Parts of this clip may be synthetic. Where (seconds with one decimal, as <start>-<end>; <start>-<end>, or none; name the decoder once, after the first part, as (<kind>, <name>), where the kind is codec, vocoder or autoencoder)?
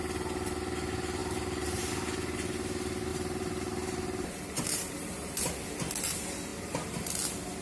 1.2-1.9 (vocoder, BigVGAN v2); 3.1-5.5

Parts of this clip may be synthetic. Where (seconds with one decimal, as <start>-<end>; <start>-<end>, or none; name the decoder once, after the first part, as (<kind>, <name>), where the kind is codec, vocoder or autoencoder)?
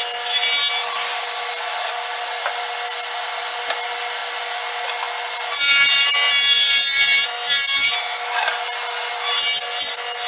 none